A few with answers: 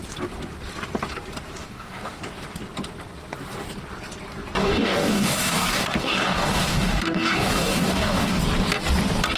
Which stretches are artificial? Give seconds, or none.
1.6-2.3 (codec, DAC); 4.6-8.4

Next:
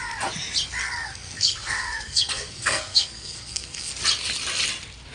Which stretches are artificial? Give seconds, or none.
0.8-3.9 (codec, SNAC)